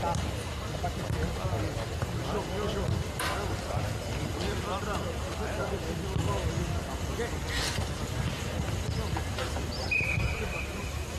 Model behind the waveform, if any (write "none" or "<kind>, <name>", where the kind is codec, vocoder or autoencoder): none